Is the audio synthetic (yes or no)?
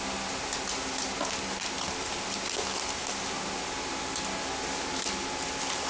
no